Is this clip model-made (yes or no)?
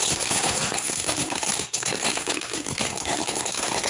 yes